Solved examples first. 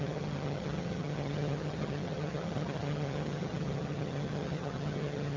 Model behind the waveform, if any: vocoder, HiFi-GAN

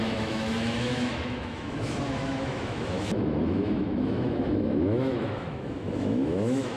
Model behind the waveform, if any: autoencoder, DAC-VAE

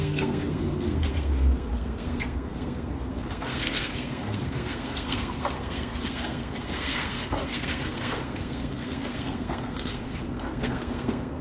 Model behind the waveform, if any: codec, SNAC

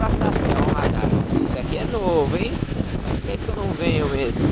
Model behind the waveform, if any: autoencoder, DAC-VAE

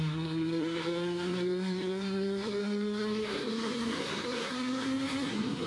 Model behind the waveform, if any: codec, SNAC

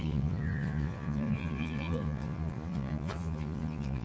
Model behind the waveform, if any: vocoder, Vocos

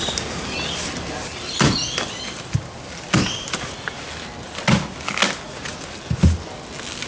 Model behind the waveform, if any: none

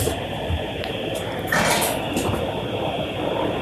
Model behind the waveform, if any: none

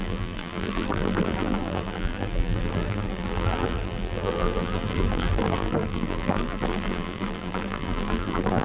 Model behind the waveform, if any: vocoder, BigVGAN v2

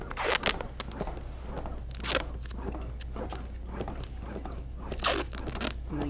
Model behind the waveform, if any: none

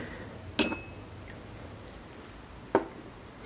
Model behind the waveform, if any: none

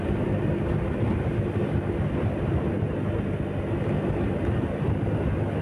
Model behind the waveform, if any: none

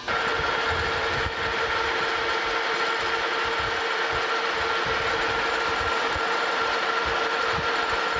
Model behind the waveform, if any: none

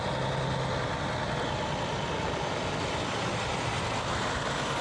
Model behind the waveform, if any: none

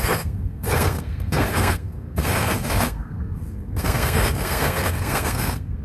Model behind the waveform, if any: codec, SNAC